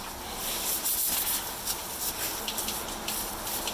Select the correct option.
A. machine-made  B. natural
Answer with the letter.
B